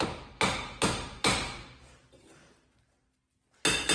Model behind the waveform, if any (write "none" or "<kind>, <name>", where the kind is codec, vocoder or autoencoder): none